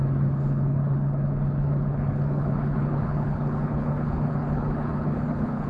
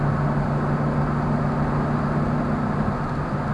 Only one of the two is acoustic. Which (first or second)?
second